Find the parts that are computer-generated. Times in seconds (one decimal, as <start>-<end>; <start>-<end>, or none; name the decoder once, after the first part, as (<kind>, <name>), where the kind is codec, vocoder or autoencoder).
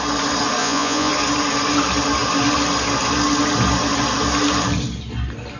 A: 0.6-1.1 (vocoder, Vocos)